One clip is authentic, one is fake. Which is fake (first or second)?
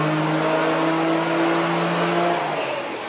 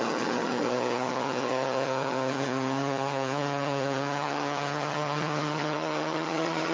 second